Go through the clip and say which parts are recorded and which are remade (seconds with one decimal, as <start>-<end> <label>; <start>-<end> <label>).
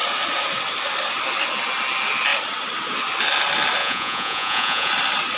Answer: 0.0-3.8 recorded; 3.8-4.9 remade; 4.9-5.4 recorded